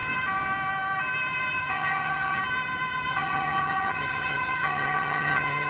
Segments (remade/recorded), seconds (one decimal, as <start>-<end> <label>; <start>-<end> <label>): 0.0-1.6 recorded; 1.6-2.4 remade; 2.4-3.1 recorded; 3.1-5.7 remade